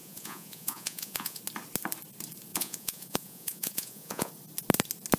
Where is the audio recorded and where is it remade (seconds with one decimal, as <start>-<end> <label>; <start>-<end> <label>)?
0.0-1.4 remade; 1.4-2.5 recorded; 2.5-4.3 remade; 4.3-5.2 recorded